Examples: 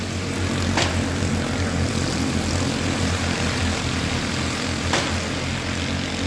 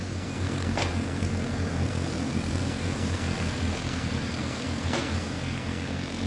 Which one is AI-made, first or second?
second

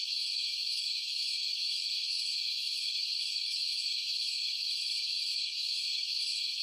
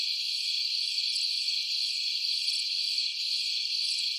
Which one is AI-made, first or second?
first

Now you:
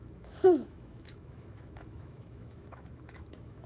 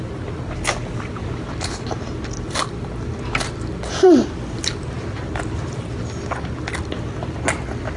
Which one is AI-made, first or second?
first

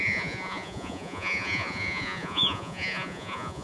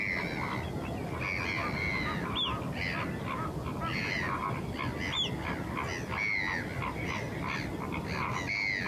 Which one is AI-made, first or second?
first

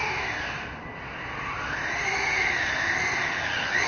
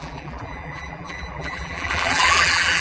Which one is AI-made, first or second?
second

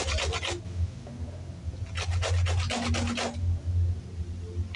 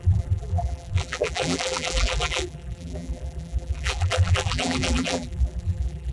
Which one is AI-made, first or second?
second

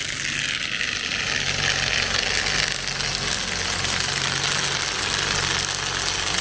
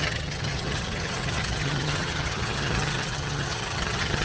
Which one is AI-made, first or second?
second